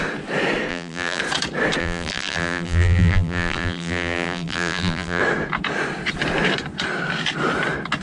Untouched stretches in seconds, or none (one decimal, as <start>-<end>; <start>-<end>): 0.0-0.7; 1.2-1.8; 5.2-8.0